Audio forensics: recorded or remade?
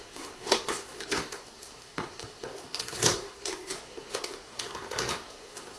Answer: remade